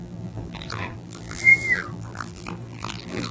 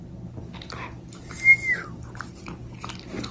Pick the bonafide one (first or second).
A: second